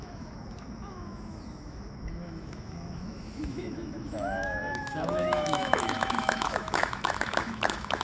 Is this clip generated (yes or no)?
yes